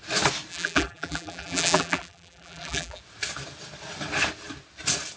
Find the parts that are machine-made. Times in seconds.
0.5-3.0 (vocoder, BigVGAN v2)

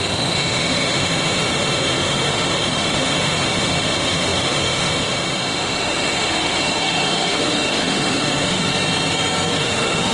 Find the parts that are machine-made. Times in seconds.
0.0-8.7 (autoencoder, DAC-VAE); 9.6-10.1

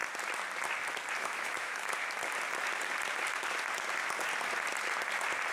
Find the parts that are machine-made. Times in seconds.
1.2-1.9 (autoencoder, DAC-VAE)

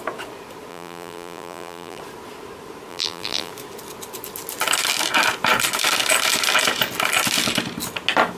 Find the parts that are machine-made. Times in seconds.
0.7-2.0 (vocoder, BigVGAN v2); 2.9-3.5